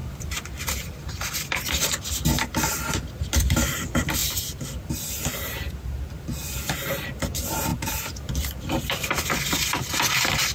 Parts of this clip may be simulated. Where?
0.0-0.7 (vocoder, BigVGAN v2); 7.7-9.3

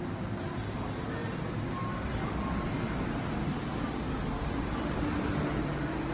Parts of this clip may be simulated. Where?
none

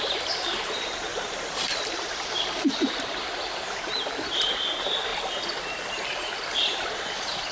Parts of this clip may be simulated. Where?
0.0-1.1 (vocoder, BigVGAN v2); 1.9-5.1; 5.9-7.5

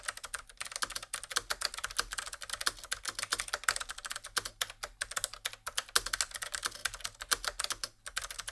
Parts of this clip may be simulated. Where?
none

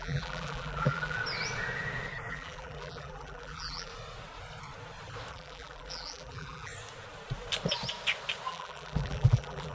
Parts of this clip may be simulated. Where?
0.0-1.2 (vocoder, BigVGAN v2); 2.3-3.9; 5.3-6.7; 8.5-9.7